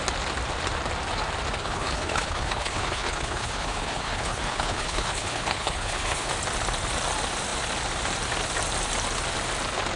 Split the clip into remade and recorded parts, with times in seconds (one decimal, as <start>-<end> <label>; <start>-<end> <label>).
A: 0.0-1.6 recorded; 1.6-6.3 remade; 6.3-10.0 recorded